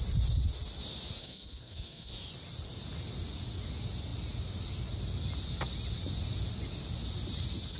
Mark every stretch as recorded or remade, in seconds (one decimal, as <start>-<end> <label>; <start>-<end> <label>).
0.0-1.2 recorded; 1.2-2.1 remade; 2.1-7.8 recorded